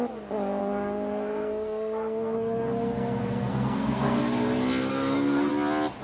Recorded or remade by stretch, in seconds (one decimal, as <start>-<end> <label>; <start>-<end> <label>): 0.0-0.6 recorded; 0.6-4.2 remade; 4.2-4.9 recorded; 4.9-5.5 remade; 5.5-6.0 recorded